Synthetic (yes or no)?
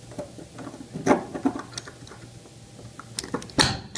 no